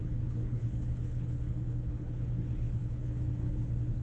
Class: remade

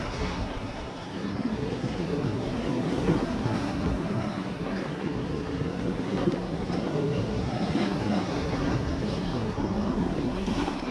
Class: remade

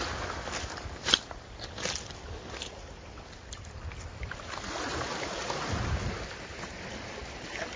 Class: recorded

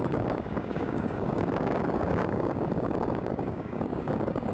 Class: remade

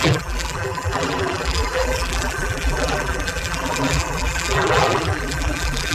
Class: remade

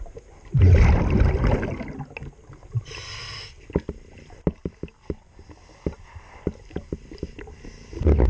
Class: recorded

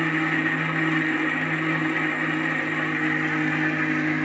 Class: recorded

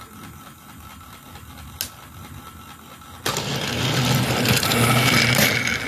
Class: recorded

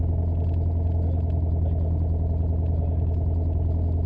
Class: recorded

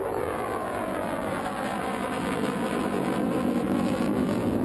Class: remade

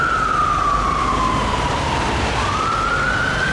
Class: remade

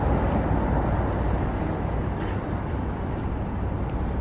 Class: recorded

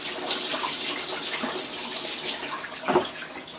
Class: recorded